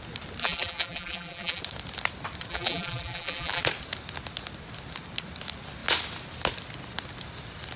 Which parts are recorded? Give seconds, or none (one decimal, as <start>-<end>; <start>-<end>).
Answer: 0.0-0.4; 1.6-2.5; 3.6-7.8